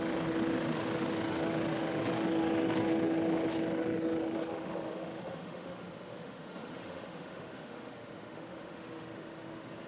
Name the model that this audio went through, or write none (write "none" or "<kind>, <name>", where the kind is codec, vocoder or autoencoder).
autoencoder, DAC-VAE